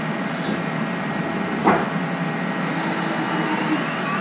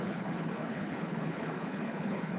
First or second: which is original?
first